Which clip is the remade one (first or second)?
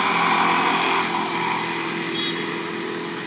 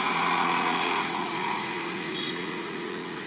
second